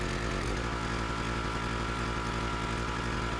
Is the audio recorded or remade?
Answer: recorded